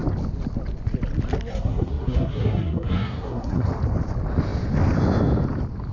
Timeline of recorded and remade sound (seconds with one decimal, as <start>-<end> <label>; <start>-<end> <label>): 0.0-1.5 recorded; 1.5-3.7 remade; 3.7-5.9 recorded